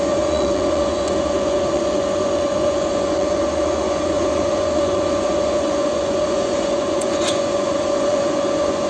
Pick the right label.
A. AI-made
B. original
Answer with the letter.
A